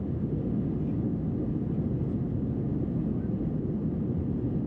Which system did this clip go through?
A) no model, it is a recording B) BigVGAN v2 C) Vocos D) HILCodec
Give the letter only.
A